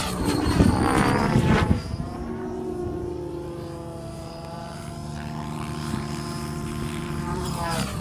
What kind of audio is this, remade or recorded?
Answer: remade